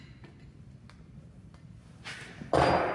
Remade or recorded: recorded